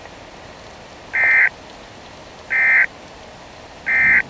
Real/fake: real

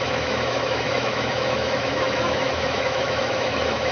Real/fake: fake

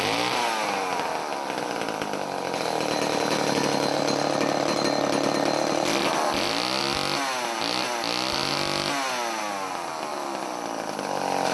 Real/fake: real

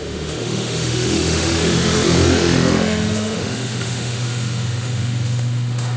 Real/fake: fake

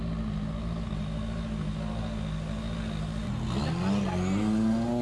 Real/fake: real